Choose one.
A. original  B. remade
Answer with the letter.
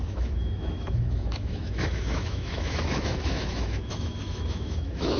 B